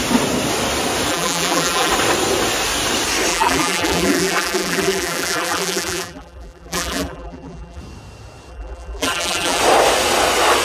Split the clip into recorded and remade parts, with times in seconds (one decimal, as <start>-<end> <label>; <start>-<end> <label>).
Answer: 0.0-1.1 recorded; 1.1-1.9 remade; 1.9-3.3 recorded; 3.3-7.8 remade; 7.8-8.5 recorded; 8.5-9.6 remade; 9.6-10.6 recorded